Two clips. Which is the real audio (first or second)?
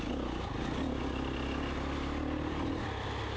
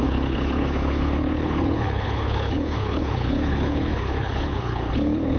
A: first